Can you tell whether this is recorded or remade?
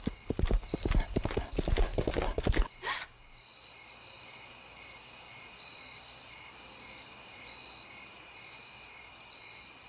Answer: recorded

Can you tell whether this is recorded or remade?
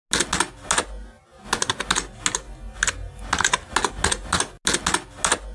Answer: recorded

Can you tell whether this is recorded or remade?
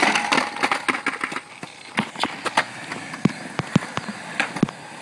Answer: recorded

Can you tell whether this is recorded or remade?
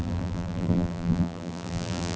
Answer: remade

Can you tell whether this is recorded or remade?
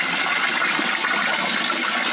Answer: recorded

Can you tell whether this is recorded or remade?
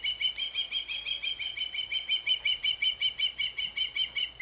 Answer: recorded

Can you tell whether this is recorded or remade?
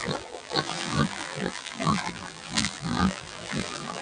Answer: remade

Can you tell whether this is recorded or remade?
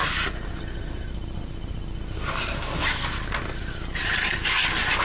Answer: recorded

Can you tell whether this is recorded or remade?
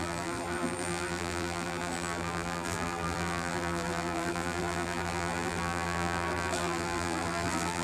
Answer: remade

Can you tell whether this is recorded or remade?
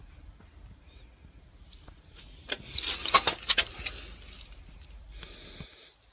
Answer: recorded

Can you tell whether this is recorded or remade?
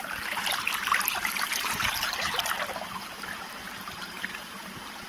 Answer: remade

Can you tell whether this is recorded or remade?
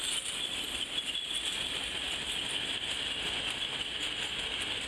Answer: recorded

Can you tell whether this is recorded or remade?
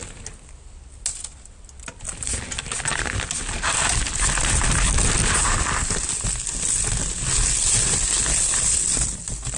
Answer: recorded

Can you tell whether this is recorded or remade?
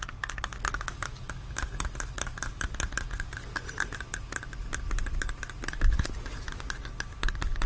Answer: recorded